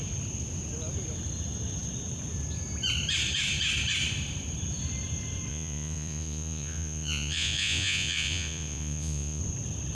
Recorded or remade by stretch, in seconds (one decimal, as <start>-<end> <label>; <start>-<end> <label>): 0.0-5.5 recorded; 5.5-9.4 remade; 9.4-9.9 recorded